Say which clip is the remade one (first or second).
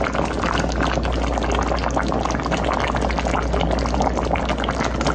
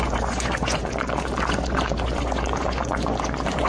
second